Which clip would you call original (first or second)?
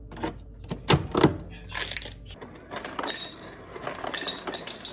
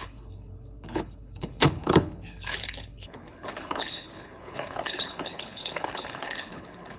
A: first